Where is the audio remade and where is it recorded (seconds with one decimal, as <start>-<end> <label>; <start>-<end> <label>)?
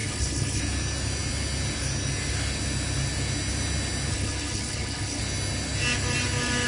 0.0-0.6 remade; 0.6-4.1 recorded; 4.1-5.2 remade; 5.2-6.7 recorded